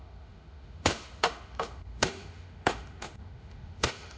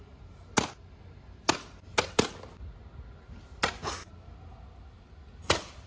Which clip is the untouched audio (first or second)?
second